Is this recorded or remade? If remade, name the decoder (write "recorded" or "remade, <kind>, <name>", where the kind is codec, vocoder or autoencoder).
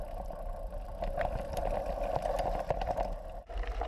remade, vocoder, BigVGAN v2